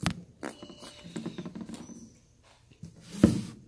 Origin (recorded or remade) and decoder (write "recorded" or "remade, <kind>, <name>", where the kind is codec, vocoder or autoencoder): recorded